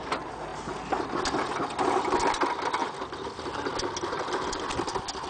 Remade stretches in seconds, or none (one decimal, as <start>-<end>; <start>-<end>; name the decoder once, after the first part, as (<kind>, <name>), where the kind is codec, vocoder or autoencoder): none